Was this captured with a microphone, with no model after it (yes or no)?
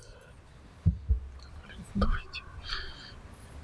yes